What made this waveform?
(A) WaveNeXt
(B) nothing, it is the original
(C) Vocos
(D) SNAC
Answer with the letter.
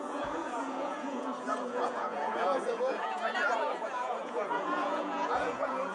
C